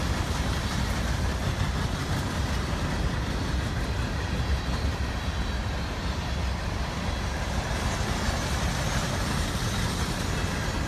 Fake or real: real